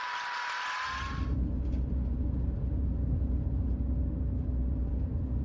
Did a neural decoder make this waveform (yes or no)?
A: no